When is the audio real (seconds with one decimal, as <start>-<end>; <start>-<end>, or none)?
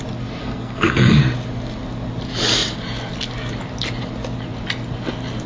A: 0.0-0.4; 1.2-5.5